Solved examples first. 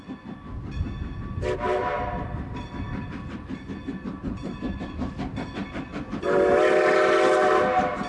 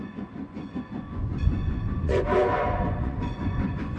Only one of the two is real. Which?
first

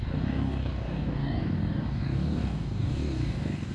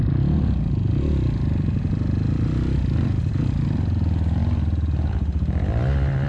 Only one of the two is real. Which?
second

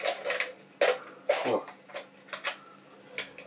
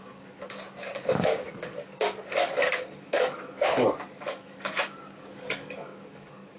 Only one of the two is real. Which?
first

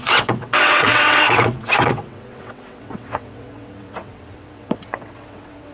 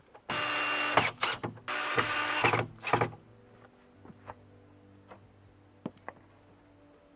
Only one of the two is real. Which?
second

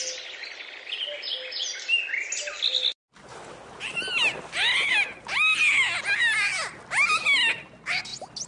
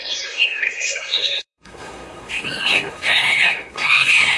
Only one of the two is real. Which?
first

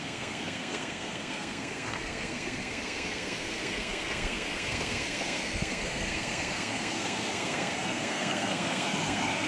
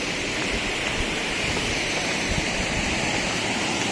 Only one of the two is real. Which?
second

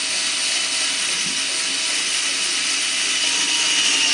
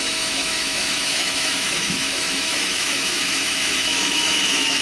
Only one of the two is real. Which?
first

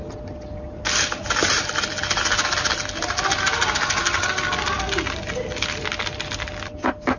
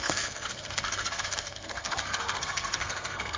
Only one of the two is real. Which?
first